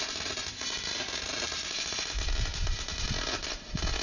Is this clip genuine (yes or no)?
yes